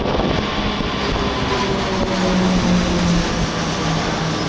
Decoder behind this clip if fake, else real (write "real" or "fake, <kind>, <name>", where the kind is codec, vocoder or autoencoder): real